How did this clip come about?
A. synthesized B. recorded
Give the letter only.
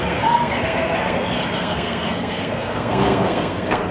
A